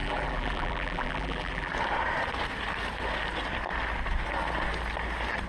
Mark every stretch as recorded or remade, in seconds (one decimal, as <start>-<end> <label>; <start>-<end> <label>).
0.0-1.7 remade; 1.7-5.5 recorded